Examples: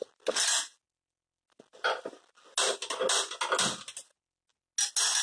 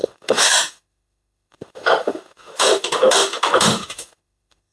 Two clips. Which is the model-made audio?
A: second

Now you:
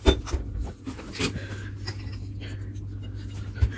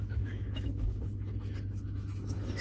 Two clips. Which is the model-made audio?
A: second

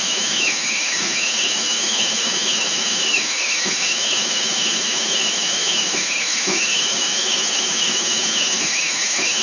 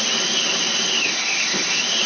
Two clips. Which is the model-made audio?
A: first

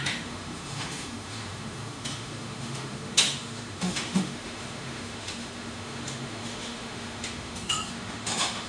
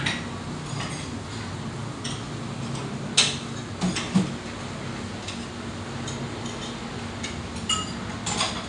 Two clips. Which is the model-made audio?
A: first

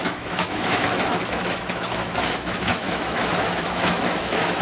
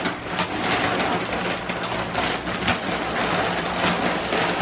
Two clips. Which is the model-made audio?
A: first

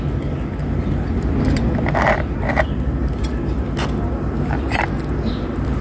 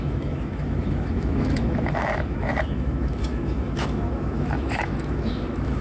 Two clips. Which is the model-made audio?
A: second